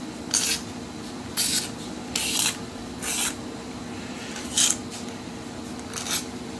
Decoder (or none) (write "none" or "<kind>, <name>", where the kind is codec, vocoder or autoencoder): none